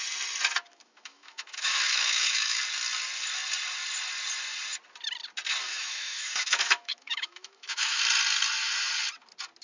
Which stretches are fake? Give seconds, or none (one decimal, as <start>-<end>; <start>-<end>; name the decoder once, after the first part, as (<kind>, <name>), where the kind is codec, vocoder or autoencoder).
0.7-2.6 (autoencoder, DAC-VAE); 5.7-8.0